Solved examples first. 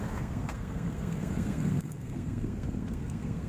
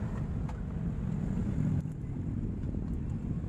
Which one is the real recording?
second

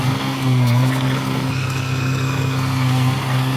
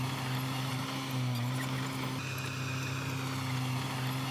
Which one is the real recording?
second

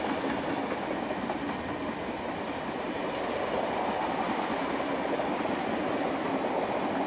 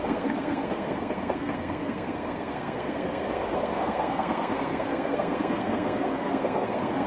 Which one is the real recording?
first